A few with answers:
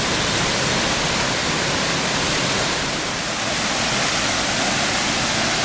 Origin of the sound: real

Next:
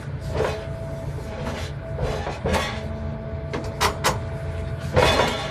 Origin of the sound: real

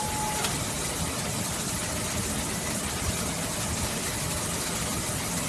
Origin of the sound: real